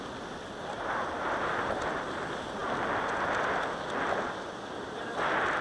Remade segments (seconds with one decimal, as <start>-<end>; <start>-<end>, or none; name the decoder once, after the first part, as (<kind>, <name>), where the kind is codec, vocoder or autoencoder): none